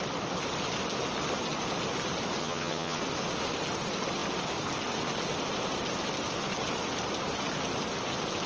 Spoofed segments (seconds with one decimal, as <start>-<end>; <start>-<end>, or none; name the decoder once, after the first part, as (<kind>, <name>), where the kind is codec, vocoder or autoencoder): 2.4-3.0 (vocoder, HiFi-GAN)